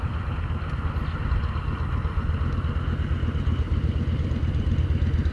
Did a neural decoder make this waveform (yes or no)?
no